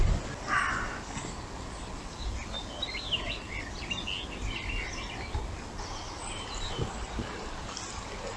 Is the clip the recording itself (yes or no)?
yes